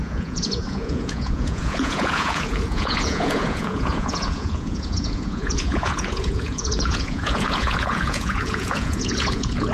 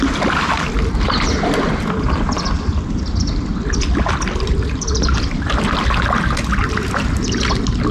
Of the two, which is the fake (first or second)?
first